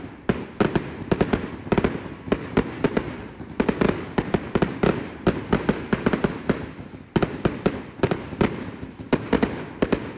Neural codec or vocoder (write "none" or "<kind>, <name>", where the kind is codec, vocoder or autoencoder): none